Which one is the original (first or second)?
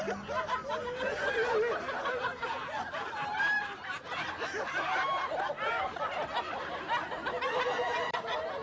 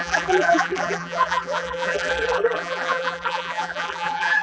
first